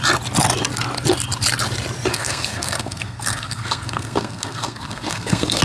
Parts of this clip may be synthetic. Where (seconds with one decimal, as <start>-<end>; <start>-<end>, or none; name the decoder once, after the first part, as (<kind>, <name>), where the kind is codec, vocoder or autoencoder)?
2.1-5.6 (codec, SNAC)